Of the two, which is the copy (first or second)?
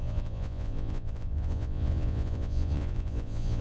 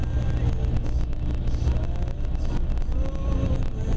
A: first